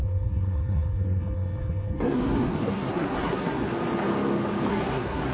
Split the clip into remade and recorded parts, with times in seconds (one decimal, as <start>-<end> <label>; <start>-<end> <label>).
0.0-3.7 remade; 3.7-4.7 recorded; 4.7-5.3 remade